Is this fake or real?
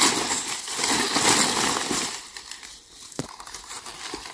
real